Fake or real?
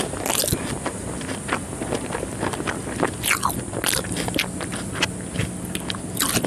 real